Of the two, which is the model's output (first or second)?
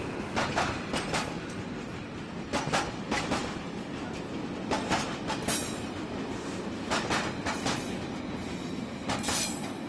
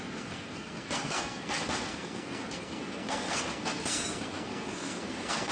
second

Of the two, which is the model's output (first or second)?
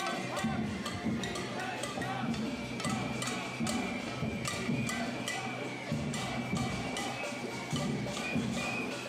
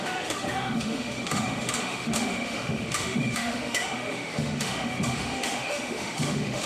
second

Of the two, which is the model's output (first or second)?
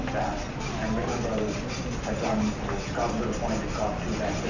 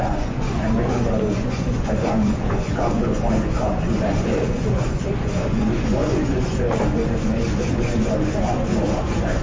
second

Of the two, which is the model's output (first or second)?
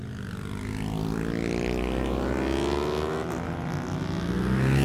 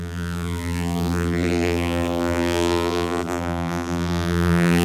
second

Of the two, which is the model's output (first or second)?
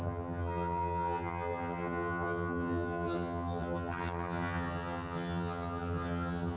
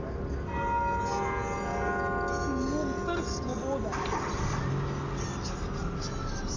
first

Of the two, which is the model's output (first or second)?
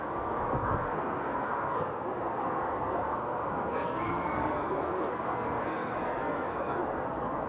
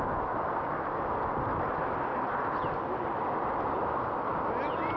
first